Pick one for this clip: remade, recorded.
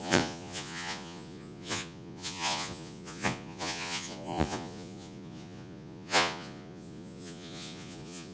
remade